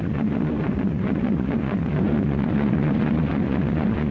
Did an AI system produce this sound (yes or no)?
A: yes